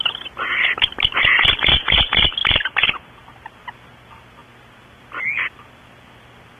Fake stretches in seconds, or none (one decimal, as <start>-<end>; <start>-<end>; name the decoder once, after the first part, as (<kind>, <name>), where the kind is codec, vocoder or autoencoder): none